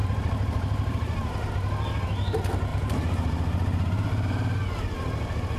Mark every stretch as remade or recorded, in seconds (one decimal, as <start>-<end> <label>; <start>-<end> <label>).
0.0-1.5 remade; 1.5-2.7 recorded; 2.7-4.1 remade; 4.1-5.6 recorded